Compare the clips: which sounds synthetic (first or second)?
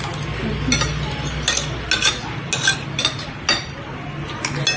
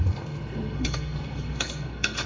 second